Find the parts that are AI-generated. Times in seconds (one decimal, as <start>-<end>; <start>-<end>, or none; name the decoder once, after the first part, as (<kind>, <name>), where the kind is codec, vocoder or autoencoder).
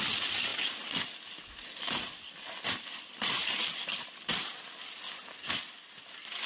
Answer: none